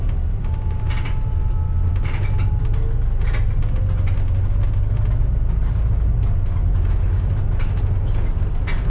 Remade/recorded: recorded